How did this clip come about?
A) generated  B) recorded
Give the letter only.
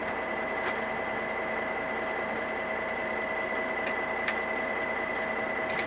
B